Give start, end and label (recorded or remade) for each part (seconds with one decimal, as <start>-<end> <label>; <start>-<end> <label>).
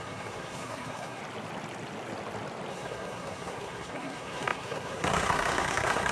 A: 0.0-1.2 remade; 1.2-2.7 recorded; 2.7-6.1 remade